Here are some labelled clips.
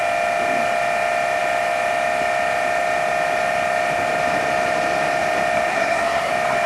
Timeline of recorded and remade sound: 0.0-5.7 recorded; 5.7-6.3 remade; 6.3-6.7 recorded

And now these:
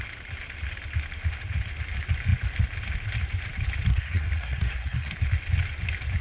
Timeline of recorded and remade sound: 0.0-3.9 recorded; 3.9-5.1 remade; 5.1-6.2 recorded

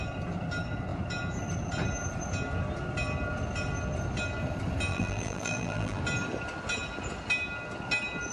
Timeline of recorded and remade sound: 0.0-4.9 recorded; 4.9-6.0 remade; 6.0-8.3 recorded